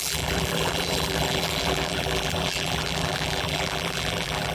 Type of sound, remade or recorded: remade